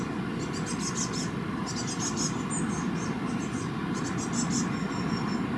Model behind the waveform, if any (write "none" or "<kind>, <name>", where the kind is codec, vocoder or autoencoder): none